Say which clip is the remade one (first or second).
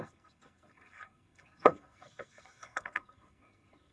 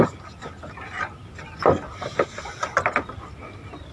first